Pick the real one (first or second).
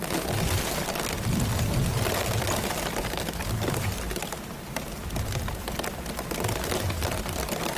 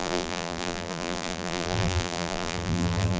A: first